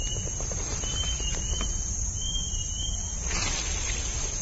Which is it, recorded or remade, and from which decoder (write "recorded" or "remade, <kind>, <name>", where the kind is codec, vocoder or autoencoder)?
recorded